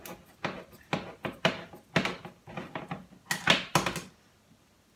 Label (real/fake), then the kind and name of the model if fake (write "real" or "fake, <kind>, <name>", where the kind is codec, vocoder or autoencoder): real